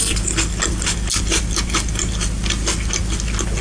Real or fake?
real